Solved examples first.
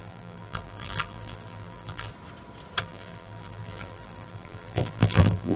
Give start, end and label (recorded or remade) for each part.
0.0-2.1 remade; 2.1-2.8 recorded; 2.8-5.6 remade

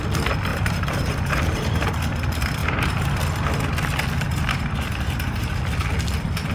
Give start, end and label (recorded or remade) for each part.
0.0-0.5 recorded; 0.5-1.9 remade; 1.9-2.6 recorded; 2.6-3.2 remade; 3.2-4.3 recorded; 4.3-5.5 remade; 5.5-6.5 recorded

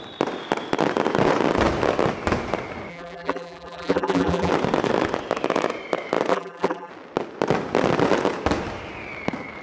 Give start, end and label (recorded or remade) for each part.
0.0-2.9 recorded; 2.9-4.5 remade; 4.5-6.3 recorded; 6.3-6.9 remade; 6.9-9.6 recorded

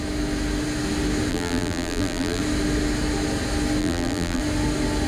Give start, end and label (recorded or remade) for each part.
0.0-1.3 recorded; 1.3-2.4 remade; 2.4-3.8 recorded; 3.8-4.4 remade; 4.4-5.1 recorded

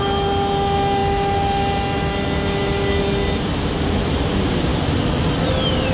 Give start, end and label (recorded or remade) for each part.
0.0-5.9 recorded

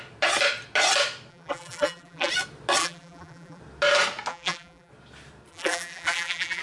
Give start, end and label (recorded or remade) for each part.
0.0-1.3 recorded; 1.3-2.3 remade; 2.3-2.8 recorded; 2.8-3.6 remade; 3.6-4.3 recorded; 4.3-4.9 remade; 4.9-5.5 recorded; 5.5-6.6 remade

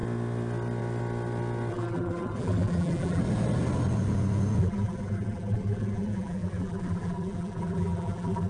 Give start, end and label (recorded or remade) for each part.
0.0-1.7 recorded; 1.7-3.2 remade; 3.2-4.6 recorded; 4.6-8.5 remade

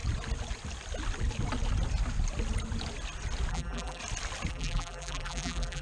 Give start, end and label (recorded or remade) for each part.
0.0-3.5 recorded; 3.5-4.0 remade; 4.0-4.5 recorded; 4.5-5.8 remade